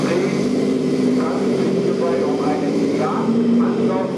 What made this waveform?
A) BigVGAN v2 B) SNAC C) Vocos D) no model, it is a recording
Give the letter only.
A